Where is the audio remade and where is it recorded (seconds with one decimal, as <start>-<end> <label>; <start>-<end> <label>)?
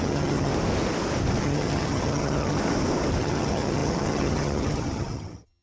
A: 0.0-0.5 remade; 0.5-1.4 recorded; 1.4-2.6 remade; 2.6-3.2 recorded; 3.2-5.6 remade